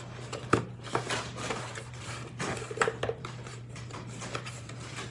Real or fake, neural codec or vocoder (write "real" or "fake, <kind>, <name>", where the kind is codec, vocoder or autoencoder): fake, vocoder, BigVGAN v2